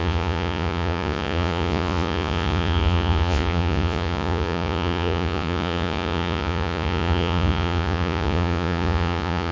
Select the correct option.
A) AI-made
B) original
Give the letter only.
A